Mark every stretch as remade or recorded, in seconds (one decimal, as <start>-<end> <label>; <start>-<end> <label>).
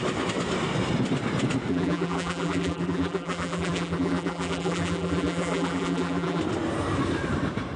0.0-1.7 recorded; 1.7-6.4 remade; 6.4-7.8 recorded